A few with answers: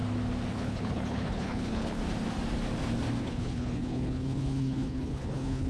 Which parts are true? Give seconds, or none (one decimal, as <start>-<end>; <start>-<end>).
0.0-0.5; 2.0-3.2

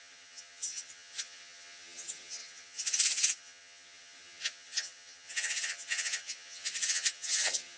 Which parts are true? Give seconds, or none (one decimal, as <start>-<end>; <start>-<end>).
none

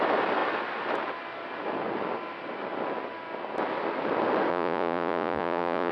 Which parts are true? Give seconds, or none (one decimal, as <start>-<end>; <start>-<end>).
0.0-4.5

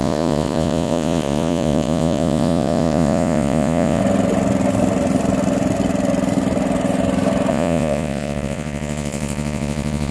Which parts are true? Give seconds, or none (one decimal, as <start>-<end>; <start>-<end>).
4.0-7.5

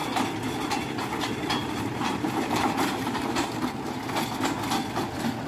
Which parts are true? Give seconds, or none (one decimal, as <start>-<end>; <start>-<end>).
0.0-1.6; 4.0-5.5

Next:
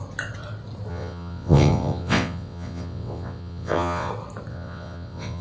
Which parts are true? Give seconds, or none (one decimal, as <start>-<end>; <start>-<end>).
0.0-0.9; 4.1-4.5